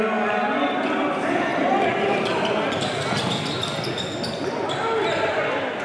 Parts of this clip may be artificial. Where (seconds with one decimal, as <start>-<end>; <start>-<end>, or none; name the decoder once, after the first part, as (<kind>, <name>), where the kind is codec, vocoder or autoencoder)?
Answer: none